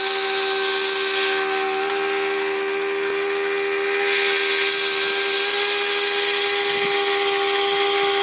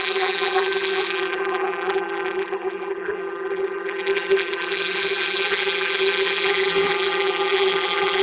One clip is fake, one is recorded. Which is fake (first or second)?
second